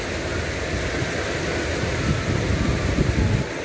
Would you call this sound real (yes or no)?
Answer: yes